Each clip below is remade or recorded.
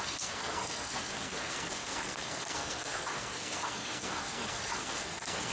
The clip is remade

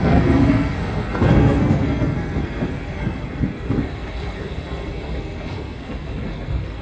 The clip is remade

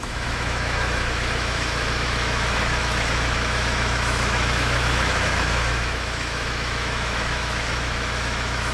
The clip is remade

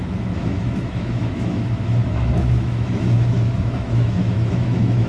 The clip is remade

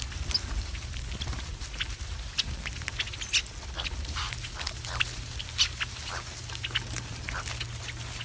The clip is recorded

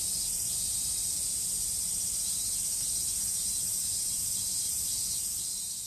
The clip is remade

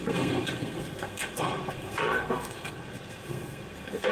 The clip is remade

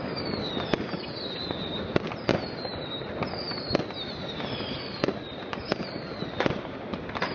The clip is recorded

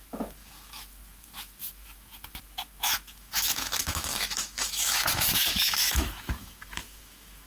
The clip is remade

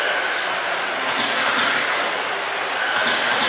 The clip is recorded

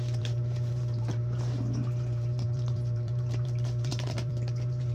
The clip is remade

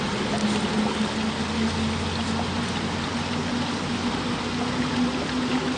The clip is recorded